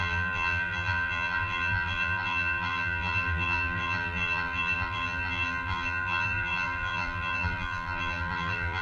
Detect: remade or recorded remade